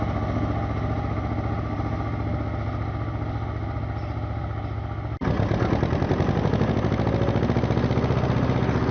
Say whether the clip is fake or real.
real